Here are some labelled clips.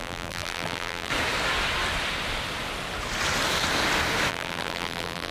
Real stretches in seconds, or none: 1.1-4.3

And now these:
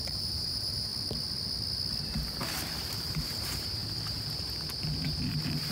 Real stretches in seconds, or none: 0.9-2.7; 3.8-5.3

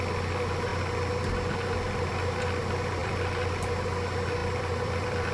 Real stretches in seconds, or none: 0.0-3.0; 3.5-4.4

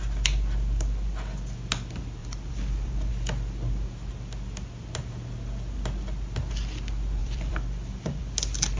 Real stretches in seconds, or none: 0.0-2.2; 3.1-7.2; 8.2-8.8

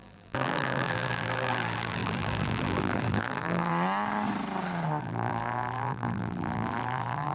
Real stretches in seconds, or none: 3.7-5.0

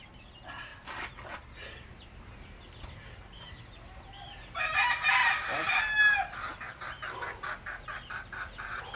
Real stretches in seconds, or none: 0.0-6.5; 7.8-9.0

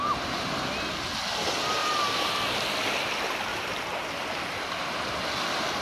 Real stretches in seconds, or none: 0.0-1.8; 2.3-3.5; 5.1-5.8